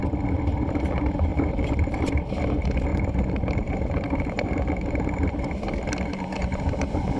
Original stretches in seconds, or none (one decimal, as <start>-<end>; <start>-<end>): 0.0-1.3; 2.0-2.9; 6.2-7.2